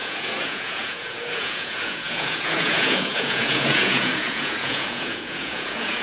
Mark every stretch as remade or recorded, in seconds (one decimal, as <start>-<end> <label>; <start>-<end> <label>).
0.0-6.0 remade